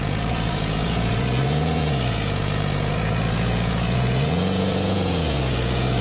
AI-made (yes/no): yes